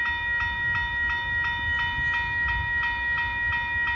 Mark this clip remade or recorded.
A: recorded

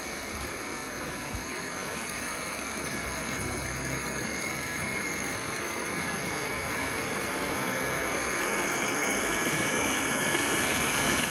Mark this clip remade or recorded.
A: remade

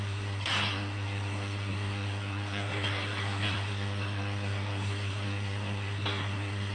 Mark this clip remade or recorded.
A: remade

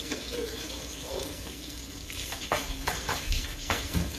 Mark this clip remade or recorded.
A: remade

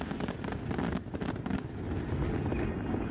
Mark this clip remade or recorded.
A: recorded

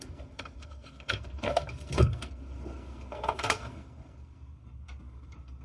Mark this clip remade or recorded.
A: remade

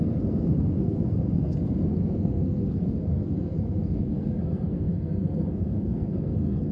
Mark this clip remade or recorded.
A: remade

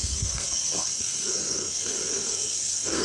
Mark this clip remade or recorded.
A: remade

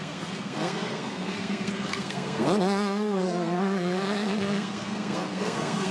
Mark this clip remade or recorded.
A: remade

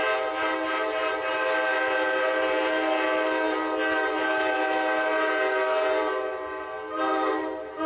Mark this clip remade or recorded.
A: recorded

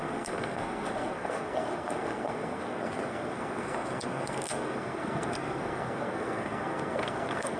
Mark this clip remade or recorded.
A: remade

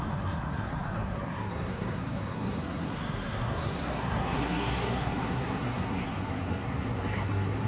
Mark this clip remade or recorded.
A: remade